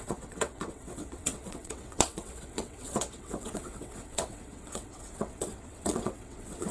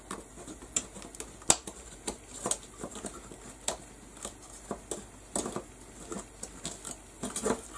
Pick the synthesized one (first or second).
first